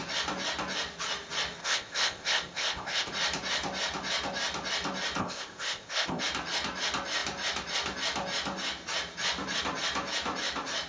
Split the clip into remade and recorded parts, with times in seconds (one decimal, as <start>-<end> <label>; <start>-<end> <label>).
0.0-1.6 recorded; 1.6-3.1 remade; 3.1-5.2 recorded; 5.2-6.2 remade; 6.2-10.9 recorded